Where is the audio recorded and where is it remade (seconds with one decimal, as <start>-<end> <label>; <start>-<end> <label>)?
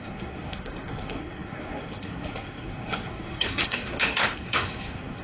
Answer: 0.0-5.2 remade